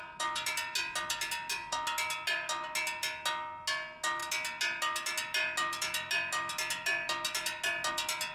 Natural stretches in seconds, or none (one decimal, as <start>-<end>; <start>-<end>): 0.0-8.3